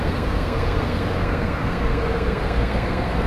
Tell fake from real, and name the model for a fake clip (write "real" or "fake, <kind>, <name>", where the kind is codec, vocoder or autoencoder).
fake, codec, SNAC